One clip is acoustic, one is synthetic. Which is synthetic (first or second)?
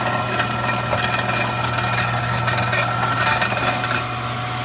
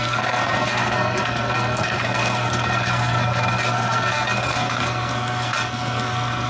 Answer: second